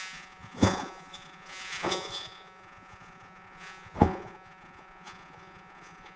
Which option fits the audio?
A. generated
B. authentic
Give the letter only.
A